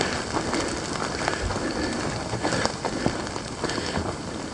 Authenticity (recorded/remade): recorded